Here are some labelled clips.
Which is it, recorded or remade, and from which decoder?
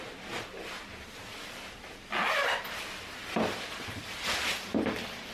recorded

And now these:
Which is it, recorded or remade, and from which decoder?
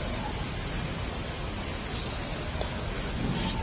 recorded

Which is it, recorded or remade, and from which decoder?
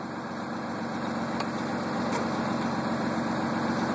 recorded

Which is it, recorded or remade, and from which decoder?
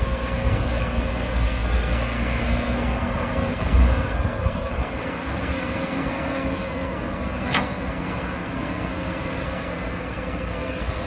remade, codec, SNAC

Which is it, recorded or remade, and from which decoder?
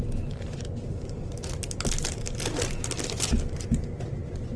recorded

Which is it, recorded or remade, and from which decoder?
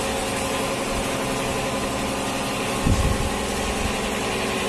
recorded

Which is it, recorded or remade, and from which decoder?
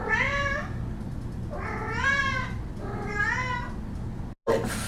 recorded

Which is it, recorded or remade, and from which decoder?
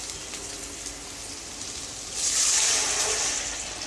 recorded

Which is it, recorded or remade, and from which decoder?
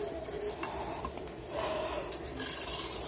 recorded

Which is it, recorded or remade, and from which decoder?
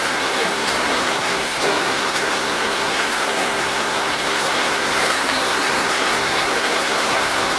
remade, codec, SNAC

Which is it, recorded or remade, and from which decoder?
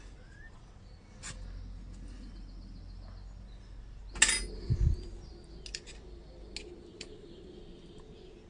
recorded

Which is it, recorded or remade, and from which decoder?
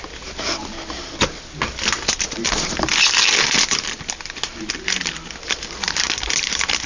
recorded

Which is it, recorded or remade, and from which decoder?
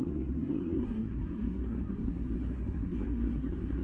remade, codec, SNAC